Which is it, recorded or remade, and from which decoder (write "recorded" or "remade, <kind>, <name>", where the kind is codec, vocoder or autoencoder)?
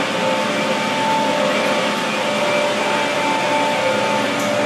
recorded